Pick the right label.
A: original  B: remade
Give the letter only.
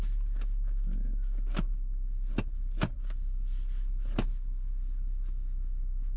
A